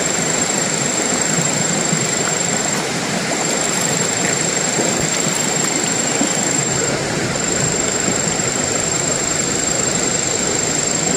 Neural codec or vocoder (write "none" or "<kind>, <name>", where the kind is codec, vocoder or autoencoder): vocoder, BigVGAN v2